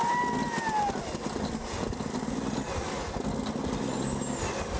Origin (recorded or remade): recorded